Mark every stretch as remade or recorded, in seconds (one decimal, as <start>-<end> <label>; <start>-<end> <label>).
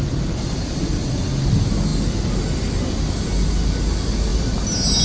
0.0-5.0 recorded